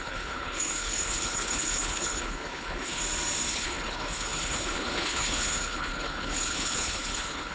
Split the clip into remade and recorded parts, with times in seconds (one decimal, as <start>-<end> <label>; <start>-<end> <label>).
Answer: 0.0-3.0 remade; 3.0-3.5 recorded; 3.5-7.5 remade